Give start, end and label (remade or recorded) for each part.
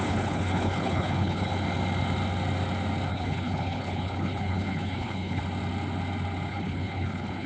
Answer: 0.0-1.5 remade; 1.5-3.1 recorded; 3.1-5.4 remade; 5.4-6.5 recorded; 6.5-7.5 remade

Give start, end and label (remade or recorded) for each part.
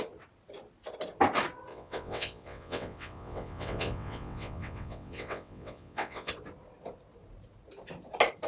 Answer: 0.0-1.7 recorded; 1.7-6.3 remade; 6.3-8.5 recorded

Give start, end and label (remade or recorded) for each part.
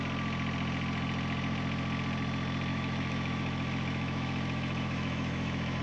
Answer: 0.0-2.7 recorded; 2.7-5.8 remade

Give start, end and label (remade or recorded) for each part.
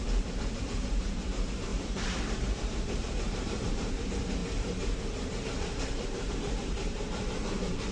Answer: 0.0-7.9 remade